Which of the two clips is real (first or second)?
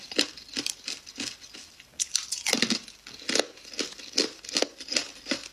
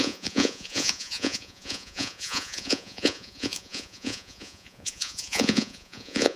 first